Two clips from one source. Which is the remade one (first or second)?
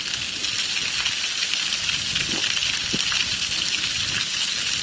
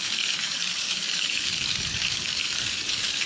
second